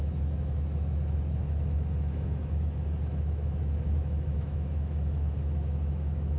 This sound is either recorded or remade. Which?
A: remade